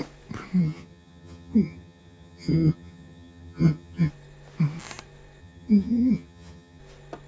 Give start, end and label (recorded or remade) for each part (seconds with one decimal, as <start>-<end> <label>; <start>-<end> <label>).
0.0-0.6 recorded; 0.6-4.1 remade; 4.1-5.4 recorded; 5.4-6.8 remade; 6.8-7.3 recorded